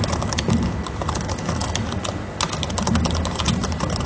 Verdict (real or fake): real